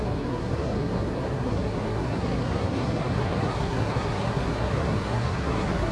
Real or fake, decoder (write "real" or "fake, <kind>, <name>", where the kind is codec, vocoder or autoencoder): fake, codec, SNAC